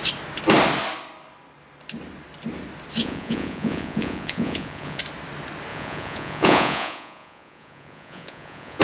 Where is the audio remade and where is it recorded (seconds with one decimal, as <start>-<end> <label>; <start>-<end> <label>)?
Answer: 0.0-3.0 recorded; 3.0-5.0 remade; 5.0-5.7 recorded; 5.7-8.8 remade